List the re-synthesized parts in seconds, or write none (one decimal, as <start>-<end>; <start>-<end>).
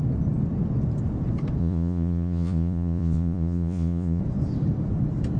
1.6-4.2